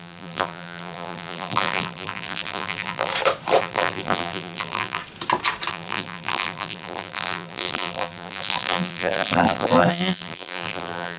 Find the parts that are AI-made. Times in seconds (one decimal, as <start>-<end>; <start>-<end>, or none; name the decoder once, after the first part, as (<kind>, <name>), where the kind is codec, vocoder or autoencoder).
0.0-3.1 (vocoder, BigVGAN v2); 3.6-5.0; 5.7-11.2